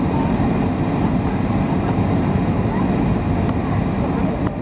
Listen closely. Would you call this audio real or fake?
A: real